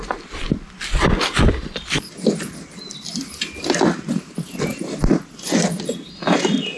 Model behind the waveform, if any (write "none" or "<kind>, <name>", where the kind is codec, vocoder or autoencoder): none